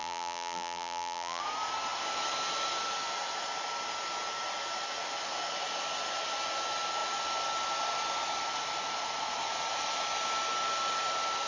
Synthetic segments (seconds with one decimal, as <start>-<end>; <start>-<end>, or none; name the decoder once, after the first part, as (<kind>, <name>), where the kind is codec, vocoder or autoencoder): 0.0-1.4 (vocoder, BigVGAN v2)